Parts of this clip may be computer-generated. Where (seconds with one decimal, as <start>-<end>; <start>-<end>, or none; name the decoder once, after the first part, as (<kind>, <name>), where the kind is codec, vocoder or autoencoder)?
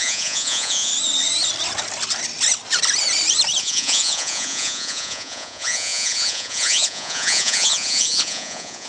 0.0-0.9 (vocoder, Vocos); 3.6-8.9